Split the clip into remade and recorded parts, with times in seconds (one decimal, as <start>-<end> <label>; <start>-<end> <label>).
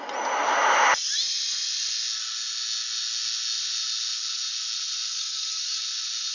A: 0.0-5.1 recorded; 5.1-5.8 remade; 5.8-6.3 recorded